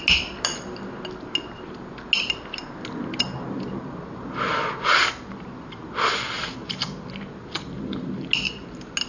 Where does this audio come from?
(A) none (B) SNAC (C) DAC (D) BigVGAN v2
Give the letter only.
A